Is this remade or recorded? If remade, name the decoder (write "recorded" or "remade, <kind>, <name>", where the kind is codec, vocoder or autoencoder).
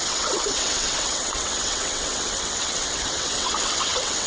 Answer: remade, vocoder, WaveNeXt